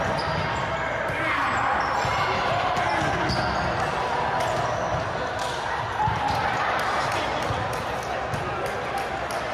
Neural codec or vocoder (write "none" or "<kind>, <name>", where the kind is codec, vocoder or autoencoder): none